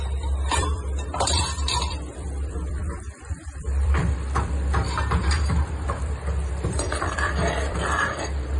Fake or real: fake